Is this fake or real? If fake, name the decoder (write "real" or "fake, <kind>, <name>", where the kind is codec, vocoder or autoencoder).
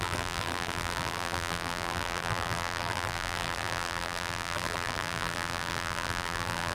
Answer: fake, vocoder, BigVGAN v2